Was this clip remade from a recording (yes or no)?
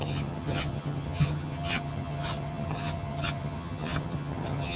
yes